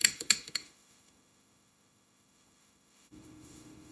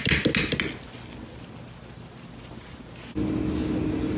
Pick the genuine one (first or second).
second